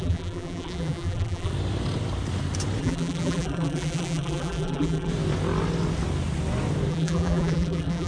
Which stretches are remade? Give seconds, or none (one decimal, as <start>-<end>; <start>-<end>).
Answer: 0.0-1.5; 2.8-5.1; 6.9-8.1